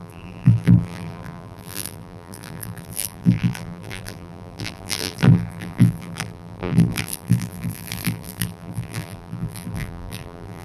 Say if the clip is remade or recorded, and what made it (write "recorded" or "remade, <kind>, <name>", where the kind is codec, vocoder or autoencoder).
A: remade, vocoder, BigVGAN v2